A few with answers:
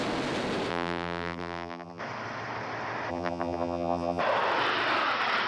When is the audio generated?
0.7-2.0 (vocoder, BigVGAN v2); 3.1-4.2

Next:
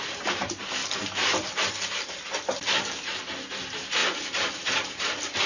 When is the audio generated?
0.8-1.5 (vocoder, BigVGAN v2); 4.0-4.6